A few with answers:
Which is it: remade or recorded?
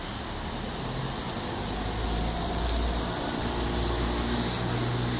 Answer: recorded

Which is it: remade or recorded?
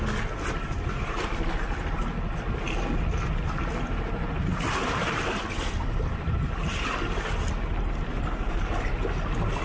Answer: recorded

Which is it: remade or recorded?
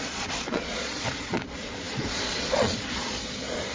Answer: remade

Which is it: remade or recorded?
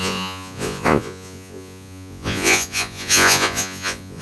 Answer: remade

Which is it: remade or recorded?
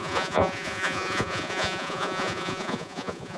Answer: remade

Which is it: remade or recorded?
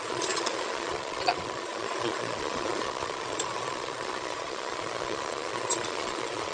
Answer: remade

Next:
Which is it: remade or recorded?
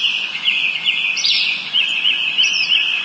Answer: remade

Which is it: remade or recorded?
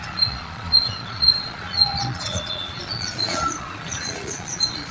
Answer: remade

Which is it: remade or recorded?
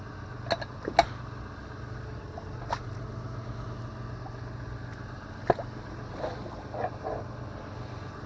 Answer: recorded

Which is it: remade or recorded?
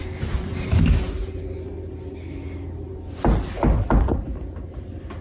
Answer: recorded